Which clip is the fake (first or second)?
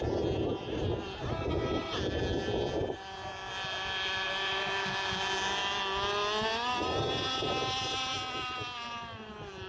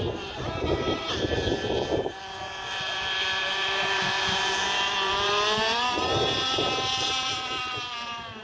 second